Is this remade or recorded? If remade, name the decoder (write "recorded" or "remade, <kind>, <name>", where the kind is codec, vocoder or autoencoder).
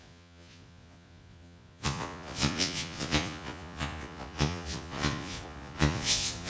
remade, vocoder, Vocos